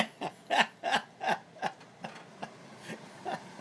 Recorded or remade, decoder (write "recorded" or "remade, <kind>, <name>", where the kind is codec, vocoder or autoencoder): recorded